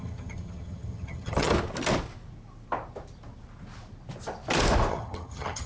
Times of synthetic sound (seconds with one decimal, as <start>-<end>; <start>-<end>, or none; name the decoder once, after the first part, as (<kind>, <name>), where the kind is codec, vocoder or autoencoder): 0.0-1.5 (vocoder, HiFi-GAN); 4.9-5.7